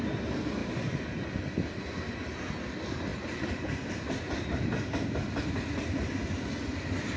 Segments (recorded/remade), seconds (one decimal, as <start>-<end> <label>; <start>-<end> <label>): 0.0-0.6 recorded; 0.6-1.2 remade; 1.2-3.1 recorded; 3.1-5.5 remade; 5.5-7.2 recorded